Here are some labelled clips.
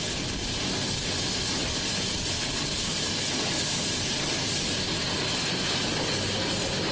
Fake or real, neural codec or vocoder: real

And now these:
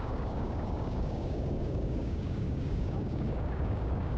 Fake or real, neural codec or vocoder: fake, codec, DAC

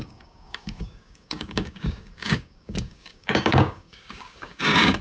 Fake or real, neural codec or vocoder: fake, codec, DAC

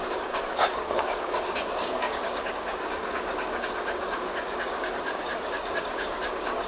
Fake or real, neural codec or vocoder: fake, codec, DAC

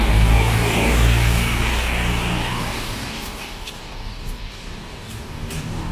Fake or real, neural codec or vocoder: fake, codec, DAC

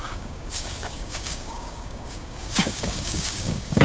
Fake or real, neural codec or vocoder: fake, codec, DAC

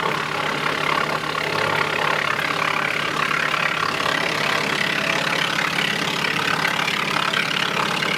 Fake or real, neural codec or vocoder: real